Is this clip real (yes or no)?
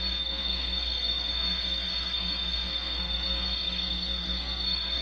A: no